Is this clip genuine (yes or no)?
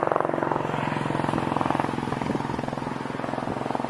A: yes